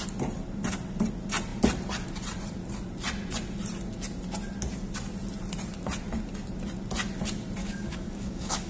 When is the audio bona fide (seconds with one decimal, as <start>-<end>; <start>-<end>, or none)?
0.0-7.6